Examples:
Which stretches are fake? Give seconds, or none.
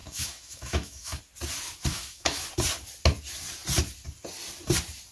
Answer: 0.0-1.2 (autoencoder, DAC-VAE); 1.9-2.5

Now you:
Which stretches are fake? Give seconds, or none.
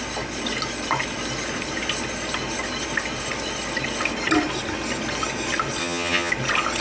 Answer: 5.8-6.3 (vocoder, HiFi-GAN)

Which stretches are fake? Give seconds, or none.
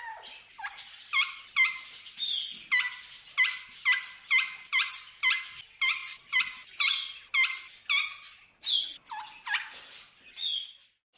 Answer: none